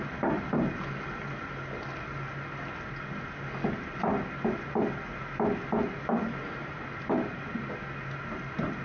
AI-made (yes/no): no